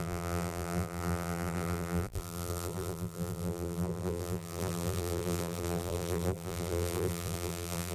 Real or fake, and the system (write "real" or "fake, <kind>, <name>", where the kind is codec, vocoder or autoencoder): fake, vocoder, BigVGAN v2